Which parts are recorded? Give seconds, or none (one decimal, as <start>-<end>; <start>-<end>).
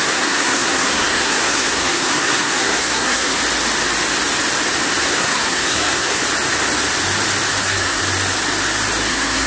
3.3-5.0; 6.2-7.6; 8.0-9.1